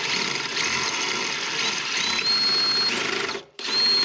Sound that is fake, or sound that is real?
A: real